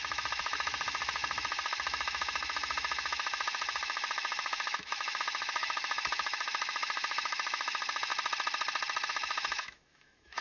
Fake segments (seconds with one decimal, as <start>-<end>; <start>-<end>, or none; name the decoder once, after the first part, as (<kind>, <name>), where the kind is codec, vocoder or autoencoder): 0.0-8.1 (autoencoder, DAC-VAE); 9.1-10.4

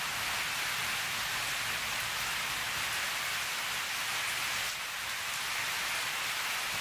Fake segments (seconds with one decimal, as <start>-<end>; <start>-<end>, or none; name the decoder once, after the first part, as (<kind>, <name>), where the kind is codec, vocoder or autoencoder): none

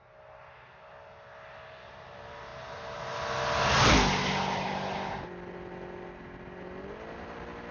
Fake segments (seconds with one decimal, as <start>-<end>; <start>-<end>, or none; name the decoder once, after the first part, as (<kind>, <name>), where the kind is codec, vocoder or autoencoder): none

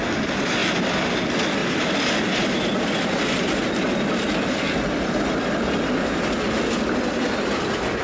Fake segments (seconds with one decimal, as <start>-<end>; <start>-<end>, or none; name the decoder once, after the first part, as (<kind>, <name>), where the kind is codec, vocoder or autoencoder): none

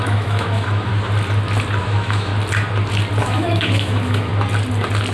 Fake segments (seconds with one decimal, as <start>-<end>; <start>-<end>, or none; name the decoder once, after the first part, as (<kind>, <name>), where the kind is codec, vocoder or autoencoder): 0.0-0.9 (autoencoder, DAC-VAE); 1.8-2.3; 3.2-4.3

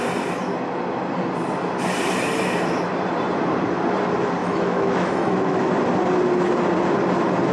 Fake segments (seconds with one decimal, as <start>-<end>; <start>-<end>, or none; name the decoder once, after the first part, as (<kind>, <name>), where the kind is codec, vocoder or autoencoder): 4.4-5.7 (autoencoder, DAC-VAE)